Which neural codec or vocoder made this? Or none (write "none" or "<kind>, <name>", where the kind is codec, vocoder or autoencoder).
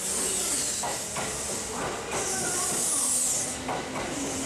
none